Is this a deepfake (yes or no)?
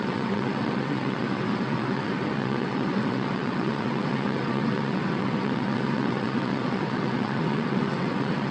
yes